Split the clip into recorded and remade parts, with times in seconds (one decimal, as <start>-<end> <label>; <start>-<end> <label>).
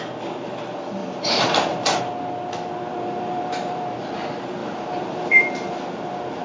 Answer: 0.0-1.0 recorded; 1.0-2.0 remade; 2.0-2.9 recorded; 2.9-3.8 remade; 3.8-4.6 recorded; 4.6-5.8 remade; 5.8-6.4 recorded